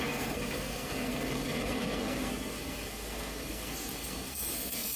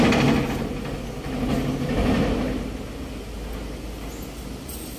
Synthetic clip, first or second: first